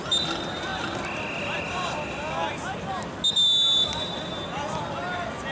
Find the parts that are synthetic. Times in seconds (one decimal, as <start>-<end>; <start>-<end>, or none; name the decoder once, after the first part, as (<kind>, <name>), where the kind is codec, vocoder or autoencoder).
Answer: none